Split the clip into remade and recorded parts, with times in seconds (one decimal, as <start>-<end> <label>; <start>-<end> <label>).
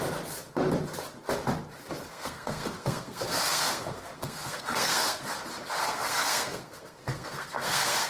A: 0.0-2.1 recorded; 2.1-5.3 remade; 5.3-5.8 recorded; 5.8-8.1 remade